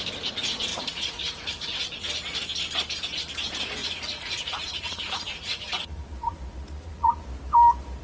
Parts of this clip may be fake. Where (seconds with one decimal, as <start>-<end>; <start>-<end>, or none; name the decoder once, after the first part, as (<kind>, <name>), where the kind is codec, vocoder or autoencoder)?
0.7-1.8 (vocoder, Vocos); 3.8-7.2